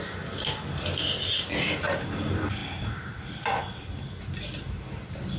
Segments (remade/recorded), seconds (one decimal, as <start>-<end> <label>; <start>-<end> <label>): 0.0-5.4 recorded